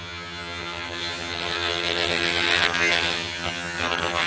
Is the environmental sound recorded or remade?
remade